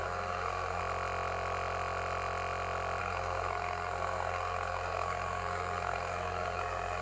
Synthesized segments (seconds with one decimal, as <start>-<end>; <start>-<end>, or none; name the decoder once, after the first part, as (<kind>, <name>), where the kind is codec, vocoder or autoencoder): 0.0-0.8 (codec, SNAC); 3.0-7.0